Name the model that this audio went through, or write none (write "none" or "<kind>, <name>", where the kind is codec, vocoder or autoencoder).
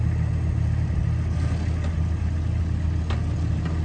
none